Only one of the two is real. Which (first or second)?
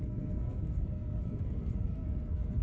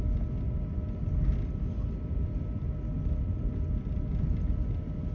second